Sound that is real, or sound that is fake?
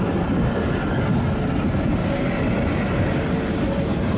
real